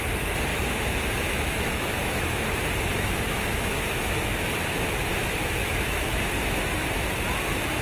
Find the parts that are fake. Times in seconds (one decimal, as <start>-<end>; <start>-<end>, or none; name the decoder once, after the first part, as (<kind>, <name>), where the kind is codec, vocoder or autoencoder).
0.5-2.4 (autoencoder, DAC-VAE); 2.9-4.5; 5.6-6.2